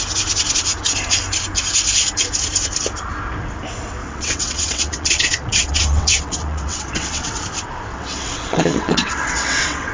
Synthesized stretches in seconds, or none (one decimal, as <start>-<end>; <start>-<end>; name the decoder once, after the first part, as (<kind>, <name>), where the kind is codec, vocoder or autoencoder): 4.0-7.4 (vocoder, WaveNeXt); 7.9-9.9

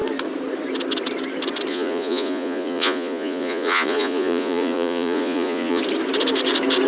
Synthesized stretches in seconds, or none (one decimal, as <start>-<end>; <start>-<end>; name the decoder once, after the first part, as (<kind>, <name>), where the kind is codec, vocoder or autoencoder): 1.7-5.8 (vocoder, Vocos)

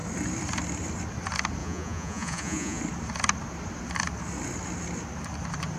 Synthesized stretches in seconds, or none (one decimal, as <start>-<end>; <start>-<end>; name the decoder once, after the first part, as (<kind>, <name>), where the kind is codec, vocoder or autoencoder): 1.6-2.8 (vocoder, Vocos)

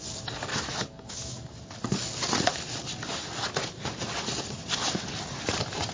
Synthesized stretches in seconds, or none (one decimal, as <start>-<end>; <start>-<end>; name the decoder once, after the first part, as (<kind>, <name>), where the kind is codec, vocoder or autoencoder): 0.5-1.5 (autoencoder, DAC-VAE)

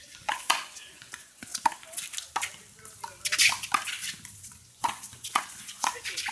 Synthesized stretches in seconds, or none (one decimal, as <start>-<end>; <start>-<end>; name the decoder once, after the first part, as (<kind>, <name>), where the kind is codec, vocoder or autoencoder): 0.0-1.5 (vocoder, Vocos); 4.4-6.3

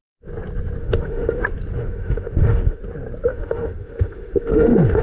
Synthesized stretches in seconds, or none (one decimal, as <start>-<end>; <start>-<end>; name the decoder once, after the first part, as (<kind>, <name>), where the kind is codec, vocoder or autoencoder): 0.8-1.4 (autoencoder, DAC-VAE); 1.8-2.8; 3.3-5.0

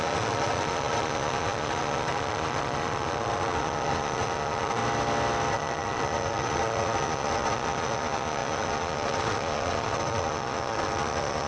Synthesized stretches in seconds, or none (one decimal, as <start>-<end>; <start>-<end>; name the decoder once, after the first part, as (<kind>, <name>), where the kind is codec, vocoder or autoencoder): 0.0-4.8 (vocoder, Vocos); 5.5-11.5

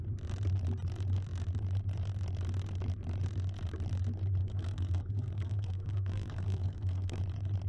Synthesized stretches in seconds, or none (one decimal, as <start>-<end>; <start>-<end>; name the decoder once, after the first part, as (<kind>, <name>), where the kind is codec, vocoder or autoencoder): 4.4-7.2 (codec, SNAC)